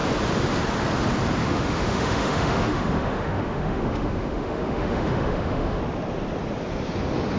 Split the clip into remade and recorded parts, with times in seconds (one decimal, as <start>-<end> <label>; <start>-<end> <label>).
0.0-1.4 recorded; 1.4-5.8 remade; 5.8-7.4 recorded